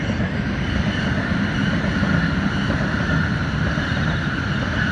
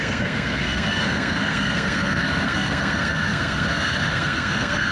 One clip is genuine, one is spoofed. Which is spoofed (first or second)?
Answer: second